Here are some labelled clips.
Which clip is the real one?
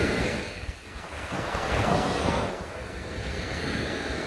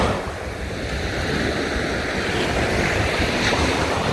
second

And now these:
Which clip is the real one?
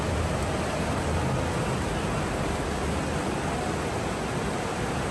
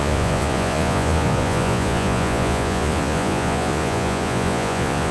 first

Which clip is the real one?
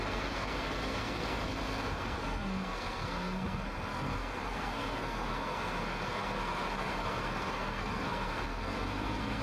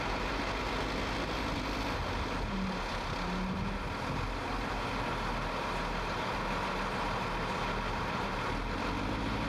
second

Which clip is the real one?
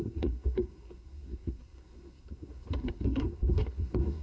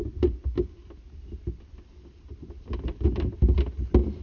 second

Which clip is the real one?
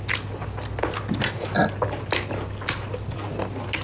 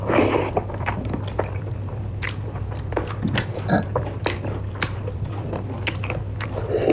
first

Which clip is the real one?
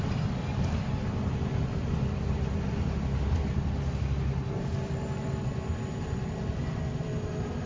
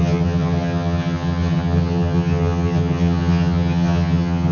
first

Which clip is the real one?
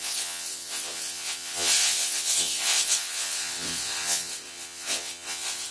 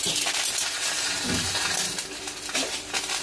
second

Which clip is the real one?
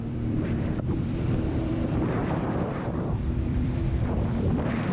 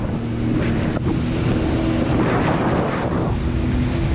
second